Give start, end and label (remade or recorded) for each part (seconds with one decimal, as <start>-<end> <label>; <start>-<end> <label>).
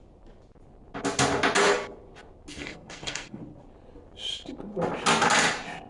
0.0-2.5 recorded; 2.5-3.4 remade; 3.4-5.9 recorded